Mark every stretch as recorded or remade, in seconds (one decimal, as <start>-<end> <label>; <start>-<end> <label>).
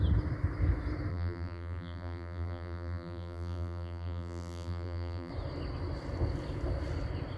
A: 0.0-1.1 recorded; 1.1-5.3 remade; 5.3-7.4 recorded